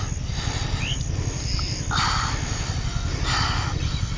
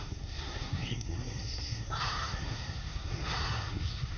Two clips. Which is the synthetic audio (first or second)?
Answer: second